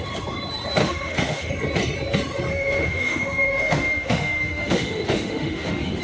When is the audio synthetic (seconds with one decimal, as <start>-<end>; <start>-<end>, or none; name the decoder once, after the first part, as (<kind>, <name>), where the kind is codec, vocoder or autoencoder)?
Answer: 0.8-1.5 (autoencoder, DAC-VAE); 2.5-6.0